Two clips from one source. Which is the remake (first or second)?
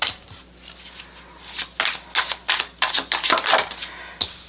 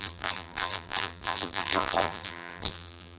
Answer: second